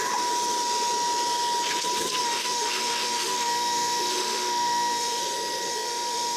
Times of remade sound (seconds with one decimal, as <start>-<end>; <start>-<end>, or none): 2.2-5.2; 5.7-6.4